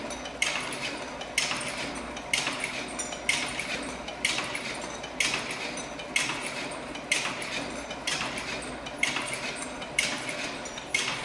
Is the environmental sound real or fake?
real